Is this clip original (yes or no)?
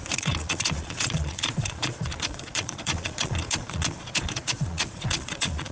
no